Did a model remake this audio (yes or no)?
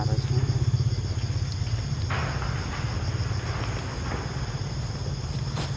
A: no